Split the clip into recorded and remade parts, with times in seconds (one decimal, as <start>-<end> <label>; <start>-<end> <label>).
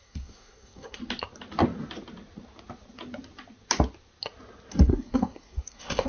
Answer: 0.0-1.0 remade; 1.0-4.7 recorded; 4.7-6.1 remade